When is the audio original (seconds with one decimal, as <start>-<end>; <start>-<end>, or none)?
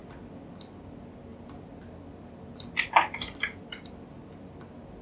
0.0-5.0